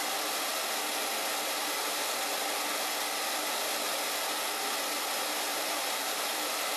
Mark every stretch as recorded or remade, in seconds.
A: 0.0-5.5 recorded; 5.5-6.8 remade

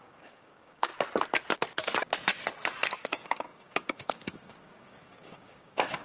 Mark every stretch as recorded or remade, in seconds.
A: 0.0-0.9 remade; 0.9-3.0 recorded; 3.0-6.0 remade

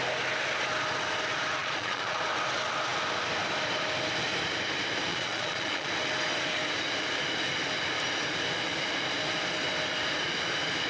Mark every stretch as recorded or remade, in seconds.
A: 0.0-1.6 recorded; 1.6-2.2 remade; 2.2-5.1 recorded; 5.1-5.9 remade; 5.9-10.9 recorded

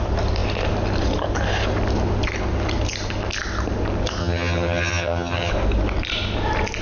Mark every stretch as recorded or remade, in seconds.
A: 0.0-4.2 recorded; 4.2-5.5 remade; 5.5-6.8 recorded